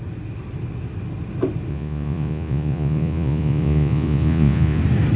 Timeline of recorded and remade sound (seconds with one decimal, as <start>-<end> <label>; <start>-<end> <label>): 0.0-1.7 recorded; 1.7-4.8 remade; 4.8-5.2 recorded